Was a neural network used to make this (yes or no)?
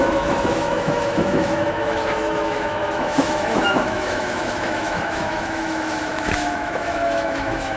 yes